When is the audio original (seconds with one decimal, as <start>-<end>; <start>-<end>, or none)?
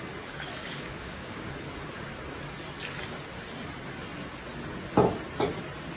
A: 0.0-0.5; 1.5-6.0